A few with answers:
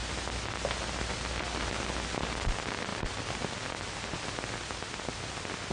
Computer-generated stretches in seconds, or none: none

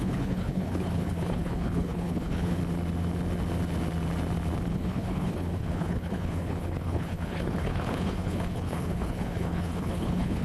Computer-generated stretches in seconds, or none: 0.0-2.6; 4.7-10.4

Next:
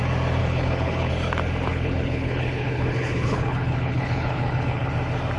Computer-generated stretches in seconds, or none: 0.4-1.1; 1.7-4.9

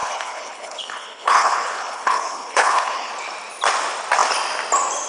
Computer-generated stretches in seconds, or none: 0.0-3.1

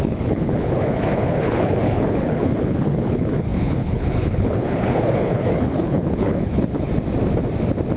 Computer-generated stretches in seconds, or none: 0.0-6.9

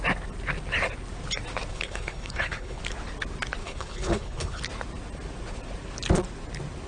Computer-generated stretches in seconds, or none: 1.7-2.8; 3.6-4.6

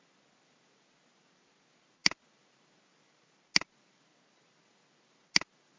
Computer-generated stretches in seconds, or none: none